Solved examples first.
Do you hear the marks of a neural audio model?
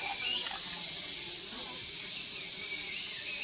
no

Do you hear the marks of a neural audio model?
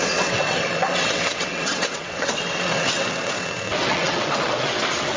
yes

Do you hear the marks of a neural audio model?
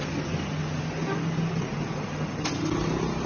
no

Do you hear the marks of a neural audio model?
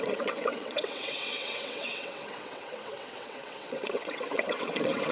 yes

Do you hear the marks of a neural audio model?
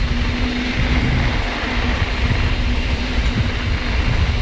no